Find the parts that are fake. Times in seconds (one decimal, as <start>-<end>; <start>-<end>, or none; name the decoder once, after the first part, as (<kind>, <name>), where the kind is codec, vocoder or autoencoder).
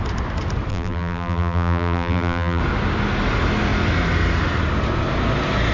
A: 0.7-2.6 (vocoder, BigVGAN v2)